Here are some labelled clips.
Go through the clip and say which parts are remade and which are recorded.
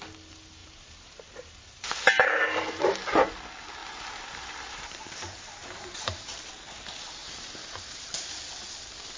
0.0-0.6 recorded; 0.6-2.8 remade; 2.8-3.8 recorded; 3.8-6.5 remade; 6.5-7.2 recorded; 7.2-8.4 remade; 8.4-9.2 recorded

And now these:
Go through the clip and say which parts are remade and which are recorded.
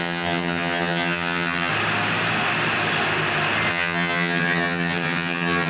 0.0-1.7 remade; 1.7-3.7 recorded; 3.7-5.7 remade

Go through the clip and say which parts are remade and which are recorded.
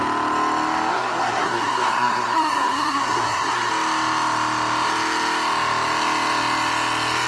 0.0-0.9 recorded; 0.9-3.7 remade; 3.7-7.3 recorded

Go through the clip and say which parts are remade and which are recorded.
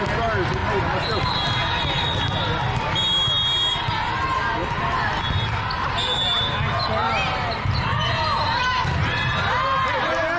0.0-10.4 recorded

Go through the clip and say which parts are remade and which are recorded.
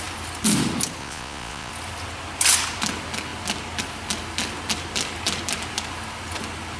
0.0-1.0 recorded; 1.0-1.7 remade; 1.7-6.8 recorded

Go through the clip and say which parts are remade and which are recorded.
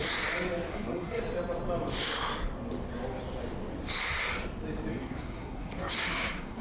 0.0-0.7 recorded; 0.7-1.2 remade; 1.2-4.9 recorded; 4.9-6.6 remade